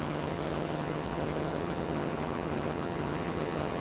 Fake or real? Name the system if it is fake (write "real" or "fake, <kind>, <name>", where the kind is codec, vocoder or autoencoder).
fake, vocoder, HiFi-GAN